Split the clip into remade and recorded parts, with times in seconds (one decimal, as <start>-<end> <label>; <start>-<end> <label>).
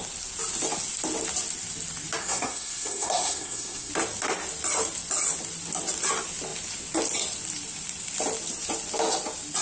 0.0-2.2 recorded; 2.2-3.9 remade; 3.9-9.6 recorded